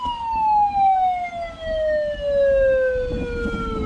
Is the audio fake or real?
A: real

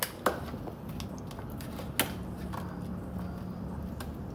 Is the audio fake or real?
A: real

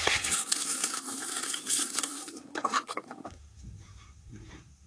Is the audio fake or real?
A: fake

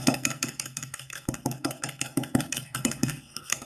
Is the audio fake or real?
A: fake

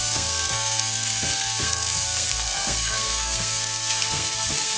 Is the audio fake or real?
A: fake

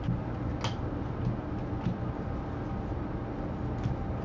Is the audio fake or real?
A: real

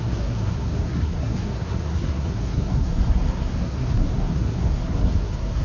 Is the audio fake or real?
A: fake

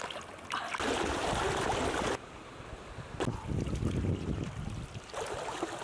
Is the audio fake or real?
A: real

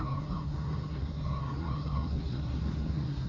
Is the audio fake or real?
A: fake